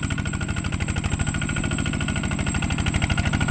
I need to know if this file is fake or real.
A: real